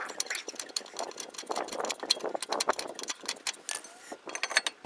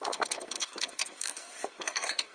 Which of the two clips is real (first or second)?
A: first